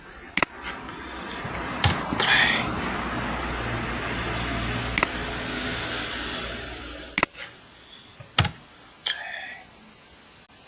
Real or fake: real